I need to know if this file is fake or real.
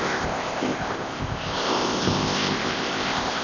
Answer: fake